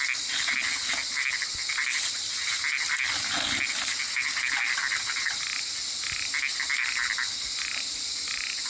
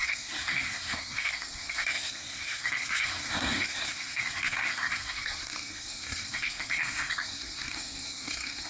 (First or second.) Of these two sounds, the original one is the first